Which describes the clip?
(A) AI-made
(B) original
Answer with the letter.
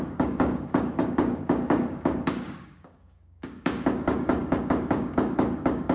A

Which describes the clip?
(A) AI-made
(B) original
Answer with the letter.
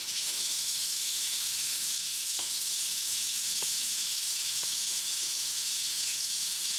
A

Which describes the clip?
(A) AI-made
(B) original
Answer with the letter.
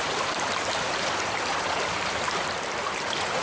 A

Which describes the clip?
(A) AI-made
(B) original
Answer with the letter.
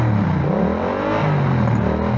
B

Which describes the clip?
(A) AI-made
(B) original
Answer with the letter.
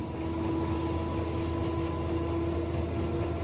B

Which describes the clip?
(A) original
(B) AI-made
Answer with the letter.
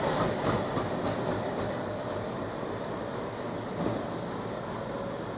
A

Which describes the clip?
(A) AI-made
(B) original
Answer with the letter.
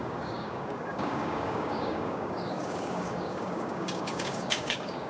A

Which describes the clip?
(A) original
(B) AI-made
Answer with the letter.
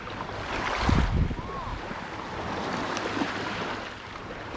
A